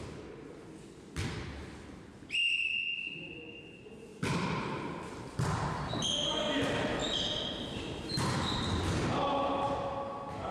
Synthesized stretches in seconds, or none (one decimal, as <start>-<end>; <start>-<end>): 7.0-9.0